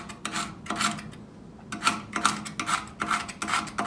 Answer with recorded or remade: recorded